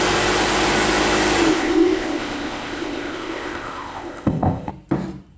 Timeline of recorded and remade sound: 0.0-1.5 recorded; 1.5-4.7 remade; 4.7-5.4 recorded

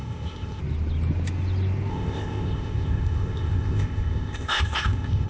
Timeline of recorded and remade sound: 0.0-0.6 remade; 0.6-1.9 recorded; 1.9-5.3 remade